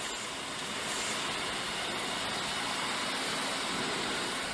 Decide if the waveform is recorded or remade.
recorded